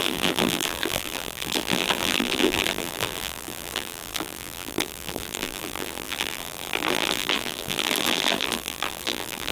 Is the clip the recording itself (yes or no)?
no